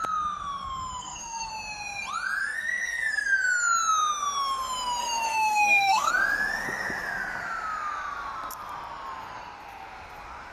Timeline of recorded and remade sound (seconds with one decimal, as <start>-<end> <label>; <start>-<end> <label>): 0.0-1.0 recorded; 1.0-1.5 remade; 1.5-2.4 recorded; 2.4-3.3 remade; 3.3-5.0 recorded; 5.0-6.1 remade; 6.1-10.5 recorded